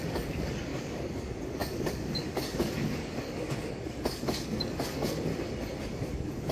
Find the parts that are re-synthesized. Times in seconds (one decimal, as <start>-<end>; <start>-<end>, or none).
0.0-5.3; 5.8-6.5